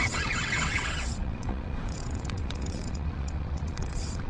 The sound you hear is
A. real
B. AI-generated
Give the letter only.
B